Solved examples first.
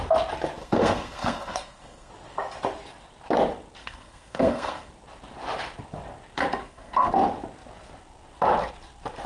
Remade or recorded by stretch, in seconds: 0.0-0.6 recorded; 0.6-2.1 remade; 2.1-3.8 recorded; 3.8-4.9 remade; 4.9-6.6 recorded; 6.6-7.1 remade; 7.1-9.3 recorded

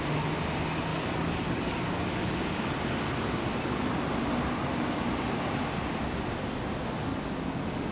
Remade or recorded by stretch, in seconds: 0.0-0.9 recorded; 0.9-2.2 remade; 2.2-7.1 recorded; 7.1-7.9 remade

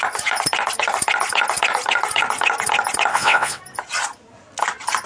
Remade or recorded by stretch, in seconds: 0.0-3.1 recorded; 3.1-3.6 remade; 3.6-5.1 recorded

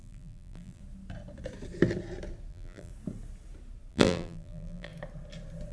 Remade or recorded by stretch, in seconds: 0.0-0.8 remade; 0.8-2.5 recorded; 2.5-2.9 remade; 2.9-3.9 recorded; 3.9-4.9 remade; 4.9-5.7 recorded

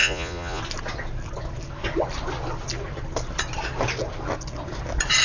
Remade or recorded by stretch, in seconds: 0.0-0.6 remade; 0.6-5.2 recorded

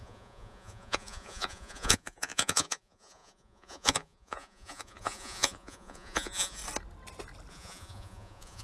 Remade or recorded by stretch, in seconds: 0.0-6.6 remade; 6.6-7.5 recorded; 7.5-8.6 remade

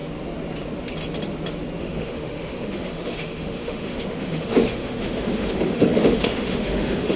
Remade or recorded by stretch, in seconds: 0.0-1.8 recorded; 1.8-7.2 remade

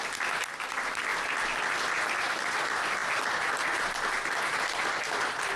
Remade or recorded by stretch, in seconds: 0.0-5.6 recorded